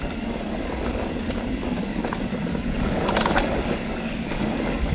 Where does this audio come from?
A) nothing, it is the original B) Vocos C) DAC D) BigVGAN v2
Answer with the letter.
C